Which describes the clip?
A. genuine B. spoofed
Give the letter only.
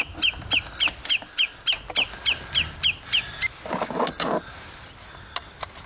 A